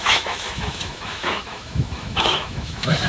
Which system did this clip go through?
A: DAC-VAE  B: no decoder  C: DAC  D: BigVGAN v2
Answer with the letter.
A